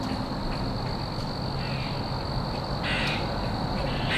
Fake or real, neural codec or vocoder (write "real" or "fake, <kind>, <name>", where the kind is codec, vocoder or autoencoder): real